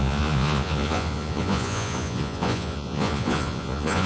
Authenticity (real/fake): fake